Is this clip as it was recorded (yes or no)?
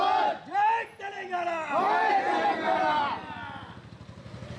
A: yes